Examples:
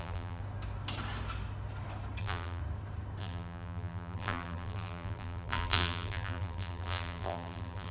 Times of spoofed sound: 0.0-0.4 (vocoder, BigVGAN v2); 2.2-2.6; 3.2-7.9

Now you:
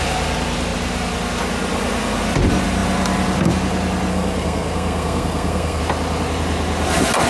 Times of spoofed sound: 4.1-5.8 (codec, SNAC)

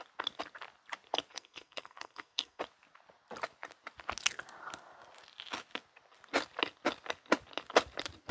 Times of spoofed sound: 1.3-2.6 (codec, SNAC)

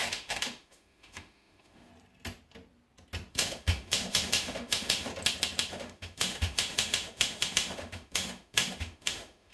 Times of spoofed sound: 0.0-1.9 (autoencoder, DAC-VAE); 3.3-5.1; 5.7-9.5

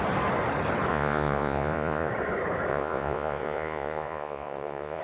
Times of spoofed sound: 0.9-2.1 (vocoder, Vocos); 2.7-5.0

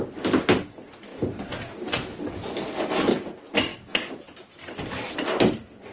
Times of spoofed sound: none

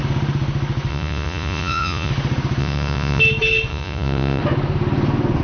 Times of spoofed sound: 0.9-2.1 (vocoder, Vocos); 2.6-3.2; 3.7-4.4